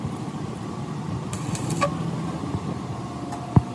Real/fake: real